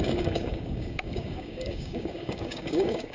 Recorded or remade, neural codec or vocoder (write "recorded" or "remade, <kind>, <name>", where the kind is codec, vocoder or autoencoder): remade, codec, DAC